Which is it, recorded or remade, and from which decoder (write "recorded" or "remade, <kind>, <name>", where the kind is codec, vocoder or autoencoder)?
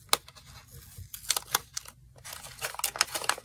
recorded